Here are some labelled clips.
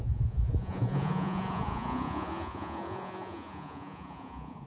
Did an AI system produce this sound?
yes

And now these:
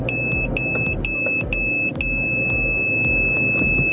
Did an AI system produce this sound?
no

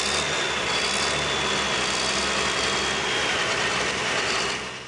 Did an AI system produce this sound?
no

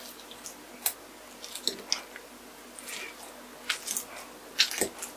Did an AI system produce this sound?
no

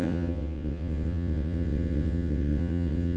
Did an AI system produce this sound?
yes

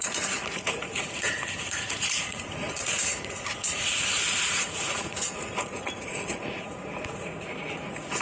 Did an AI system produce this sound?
yes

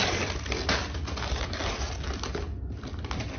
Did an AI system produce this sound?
no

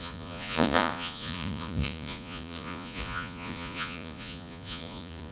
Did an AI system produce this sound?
yes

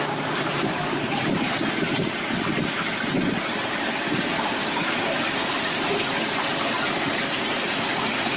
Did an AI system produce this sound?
yes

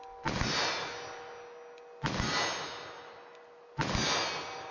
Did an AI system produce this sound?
no